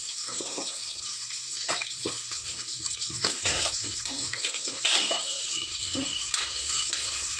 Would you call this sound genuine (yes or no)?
no